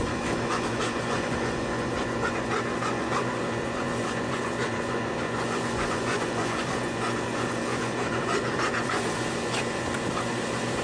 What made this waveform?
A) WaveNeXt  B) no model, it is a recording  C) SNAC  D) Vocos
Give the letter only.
D